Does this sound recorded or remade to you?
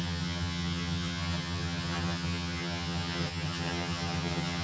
remade